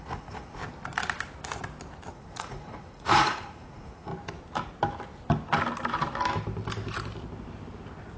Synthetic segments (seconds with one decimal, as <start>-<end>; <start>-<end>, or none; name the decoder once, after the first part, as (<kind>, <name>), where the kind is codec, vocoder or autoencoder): 0.0-0.6 (vocoder, Vocos); 2.1-4.1